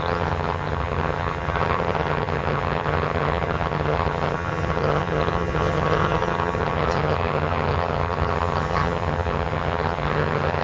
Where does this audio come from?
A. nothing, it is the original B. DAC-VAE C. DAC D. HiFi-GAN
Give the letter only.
D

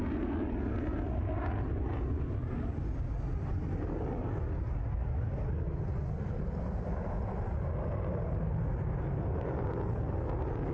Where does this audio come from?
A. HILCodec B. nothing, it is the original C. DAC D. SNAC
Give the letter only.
B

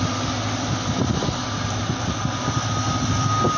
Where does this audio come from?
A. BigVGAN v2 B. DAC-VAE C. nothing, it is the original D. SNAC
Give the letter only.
C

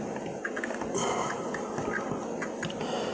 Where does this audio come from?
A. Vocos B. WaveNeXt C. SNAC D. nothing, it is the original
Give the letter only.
D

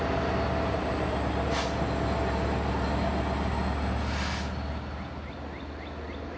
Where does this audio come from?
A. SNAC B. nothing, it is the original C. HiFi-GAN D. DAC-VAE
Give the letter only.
B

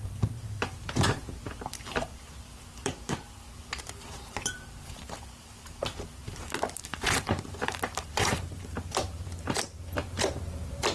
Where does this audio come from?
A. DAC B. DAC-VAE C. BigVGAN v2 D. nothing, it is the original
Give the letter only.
C